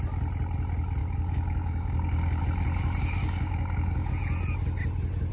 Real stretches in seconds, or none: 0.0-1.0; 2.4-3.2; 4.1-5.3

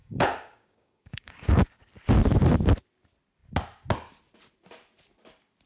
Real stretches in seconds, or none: 1.8-5.7

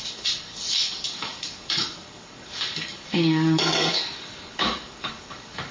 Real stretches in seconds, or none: none

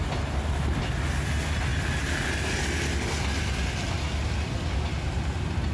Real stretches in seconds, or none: 0.0-5.7

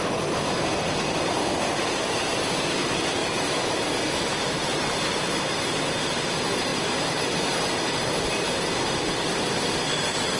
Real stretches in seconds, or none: 0.0-10.4